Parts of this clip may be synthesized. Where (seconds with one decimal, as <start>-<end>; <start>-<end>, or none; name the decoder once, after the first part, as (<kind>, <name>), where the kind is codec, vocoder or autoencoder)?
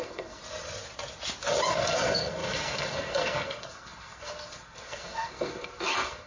0.0-0.4 (codec, SNAC); 1.7-6.3